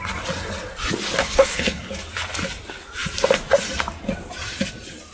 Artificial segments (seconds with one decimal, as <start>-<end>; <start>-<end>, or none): 1.2-1.9